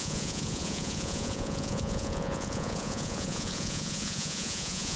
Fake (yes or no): yes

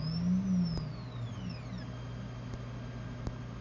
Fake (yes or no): no